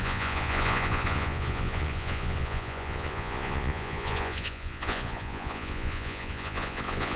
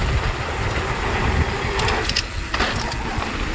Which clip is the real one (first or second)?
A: second